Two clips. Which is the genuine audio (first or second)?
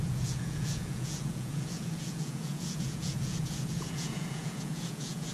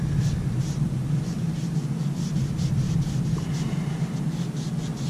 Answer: second